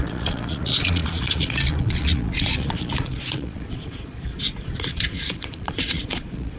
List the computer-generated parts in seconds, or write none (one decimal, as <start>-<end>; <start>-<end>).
0.0-6.6